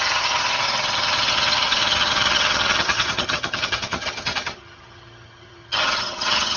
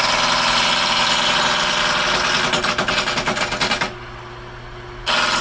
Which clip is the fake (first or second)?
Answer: first